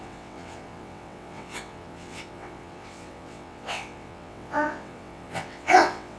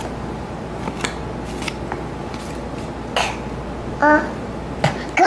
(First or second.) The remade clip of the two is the first